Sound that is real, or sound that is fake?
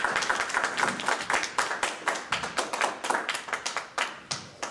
real